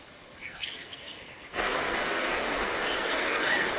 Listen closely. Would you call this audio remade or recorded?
remade